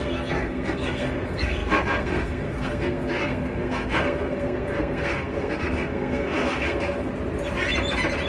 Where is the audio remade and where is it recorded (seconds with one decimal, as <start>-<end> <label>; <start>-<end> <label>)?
0.0-7.1 remade; 7.1-8.3 recorded